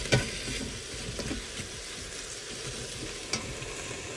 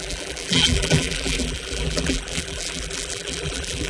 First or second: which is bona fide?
first